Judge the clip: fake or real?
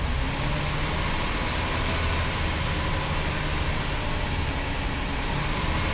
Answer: real